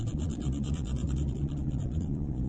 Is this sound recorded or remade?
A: remade